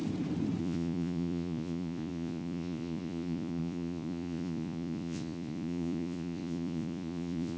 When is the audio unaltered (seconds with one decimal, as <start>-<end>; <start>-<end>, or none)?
0.0-0.6